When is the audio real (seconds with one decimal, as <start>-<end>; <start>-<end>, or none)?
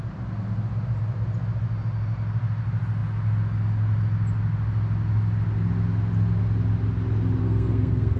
0.0-7.4